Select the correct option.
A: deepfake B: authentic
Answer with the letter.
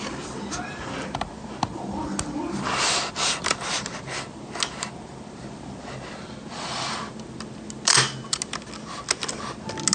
B